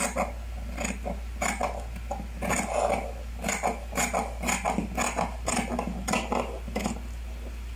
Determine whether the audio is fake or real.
real